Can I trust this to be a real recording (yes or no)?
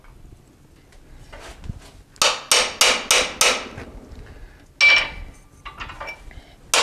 yes